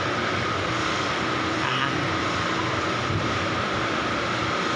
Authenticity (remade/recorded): remade